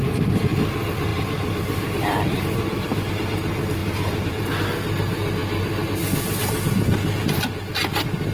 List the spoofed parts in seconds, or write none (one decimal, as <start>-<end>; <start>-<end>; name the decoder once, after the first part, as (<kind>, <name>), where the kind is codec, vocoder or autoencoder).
1.1-3.1 (vocoder, BigVGAN v2); 3.8-4.4